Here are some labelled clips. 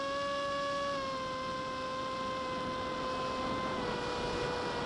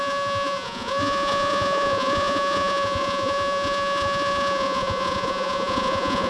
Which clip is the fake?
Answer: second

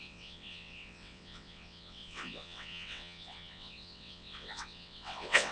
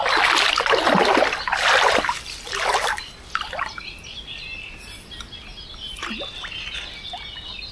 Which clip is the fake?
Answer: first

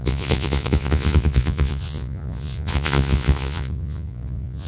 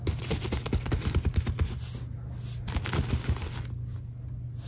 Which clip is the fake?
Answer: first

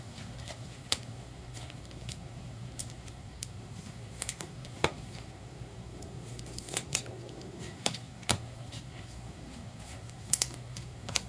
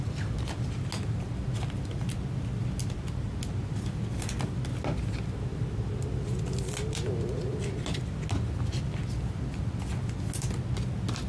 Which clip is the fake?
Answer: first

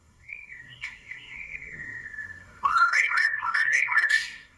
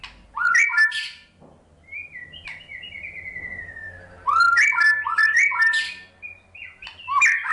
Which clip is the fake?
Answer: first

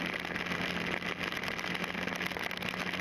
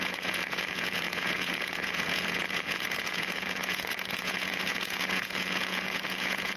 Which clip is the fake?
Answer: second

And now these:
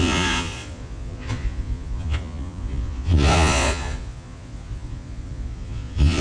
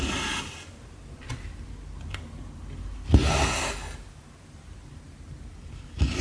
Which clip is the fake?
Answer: first